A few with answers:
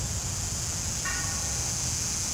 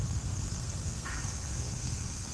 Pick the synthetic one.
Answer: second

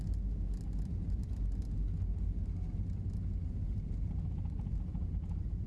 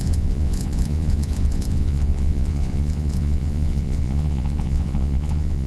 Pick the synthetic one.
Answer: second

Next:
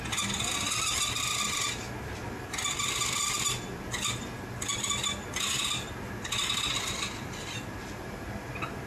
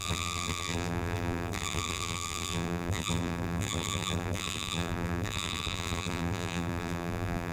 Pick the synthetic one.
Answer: second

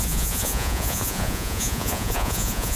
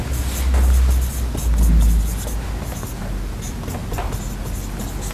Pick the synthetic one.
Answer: first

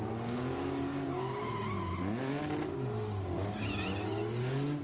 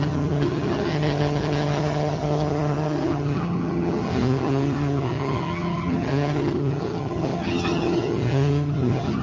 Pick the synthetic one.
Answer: second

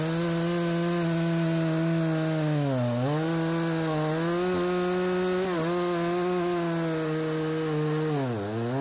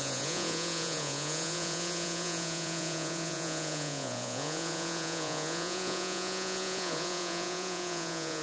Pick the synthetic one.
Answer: second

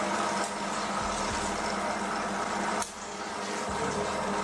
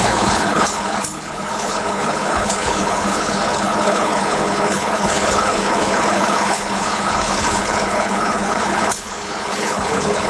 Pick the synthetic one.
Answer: second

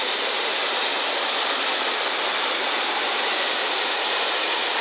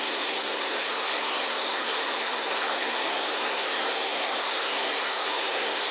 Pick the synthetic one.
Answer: second